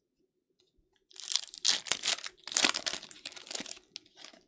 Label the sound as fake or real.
real